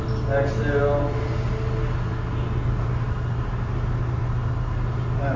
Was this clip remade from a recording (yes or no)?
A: no